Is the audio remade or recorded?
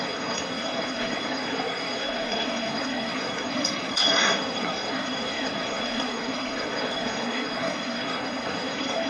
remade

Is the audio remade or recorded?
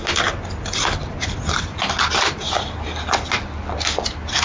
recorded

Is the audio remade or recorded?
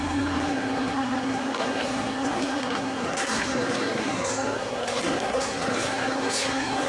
remade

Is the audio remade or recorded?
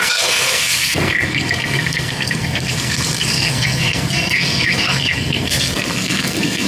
remade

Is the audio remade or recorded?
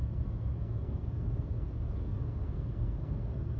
remade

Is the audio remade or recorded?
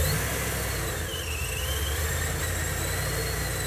recorded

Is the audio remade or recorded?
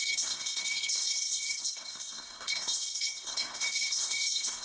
remade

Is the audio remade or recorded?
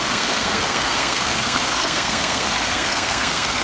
remade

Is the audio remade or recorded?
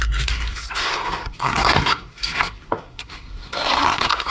remade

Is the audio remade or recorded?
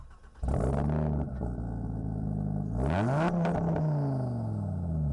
recorded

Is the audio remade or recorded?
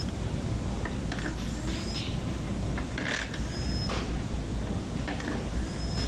recorded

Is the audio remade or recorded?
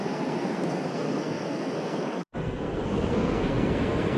remade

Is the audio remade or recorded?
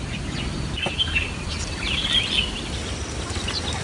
recorded